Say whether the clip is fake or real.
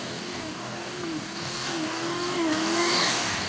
fake